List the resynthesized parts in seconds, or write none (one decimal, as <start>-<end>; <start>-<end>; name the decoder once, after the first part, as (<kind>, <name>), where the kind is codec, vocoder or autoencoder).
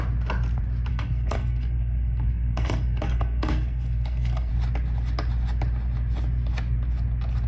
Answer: 0.9-4.5 (codec, SNAC)